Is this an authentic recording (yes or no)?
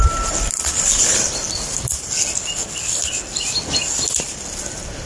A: yes